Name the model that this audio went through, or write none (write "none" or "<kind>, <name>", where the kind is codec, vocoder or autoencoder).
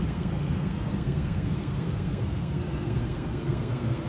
codec, SNAC